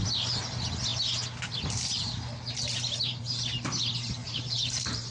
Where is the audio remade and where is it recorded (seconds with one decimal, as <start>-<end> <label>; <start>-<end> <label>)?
0.0-4.2 recorded; 4.2-5.1 remade